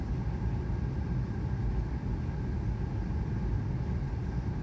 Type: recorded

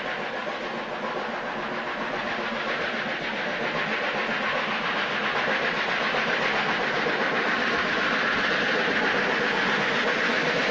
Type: recorded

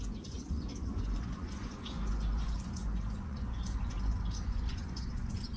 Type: remade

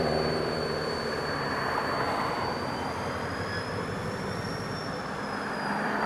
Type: remade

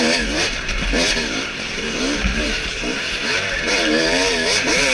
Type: remade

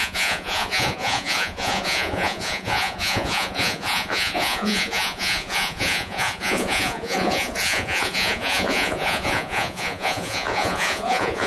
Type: remade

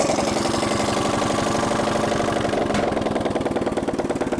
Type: recorded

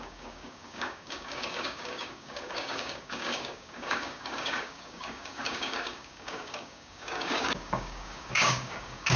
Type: remade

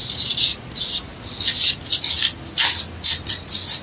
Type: recorded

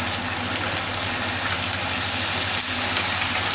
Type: recorded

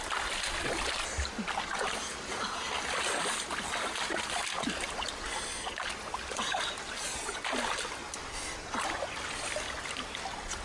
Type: recorded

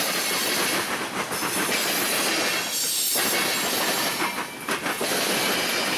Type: recorded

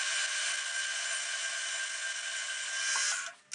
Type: recorded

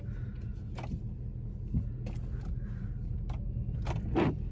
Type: recorded